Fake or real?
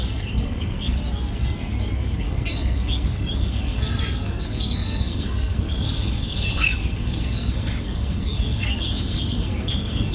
fake